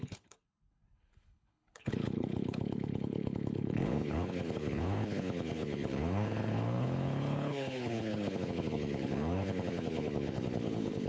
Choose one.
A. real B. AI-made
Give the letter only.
B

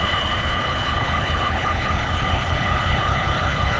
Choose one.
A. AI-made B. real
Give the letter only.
A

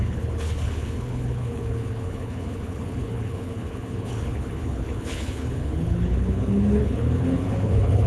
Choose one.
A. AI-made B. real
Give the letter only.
A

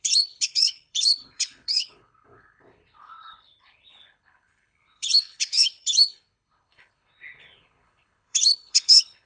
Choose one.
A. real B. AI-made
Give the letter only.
B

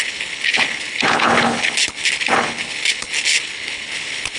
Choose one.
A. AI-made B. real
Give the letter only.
A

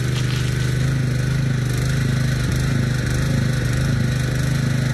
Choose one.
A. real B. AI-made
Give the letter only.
A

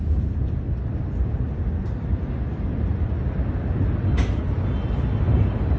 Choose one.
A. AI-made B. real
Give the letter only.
B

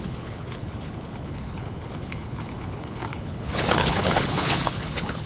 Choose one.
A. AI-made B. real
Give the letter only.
A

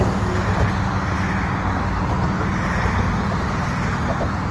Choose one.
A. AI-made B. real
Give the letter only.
B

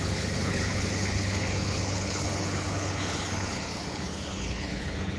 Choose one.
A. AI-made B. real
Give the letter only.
A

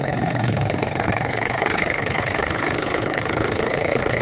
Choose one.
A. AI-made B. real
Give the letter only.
A